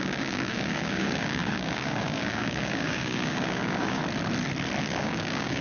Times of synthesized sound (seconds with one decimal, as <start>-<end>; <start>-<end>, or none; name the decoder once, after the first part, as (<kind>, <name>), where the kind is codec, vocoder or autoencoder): 0.0-4.0 (codec, DAC); 4.8-5.6